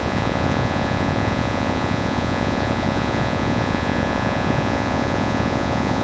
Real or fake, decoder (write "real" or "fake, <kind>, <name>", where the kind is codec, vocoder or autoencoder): fake, vocoder, Vocos